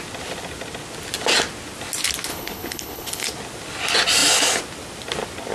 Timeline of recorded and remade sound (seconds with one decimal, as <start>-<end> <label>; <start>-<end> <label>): 0.0-2.3 recorded; 2.3-3.3 remade; 3.3-5.5 recorded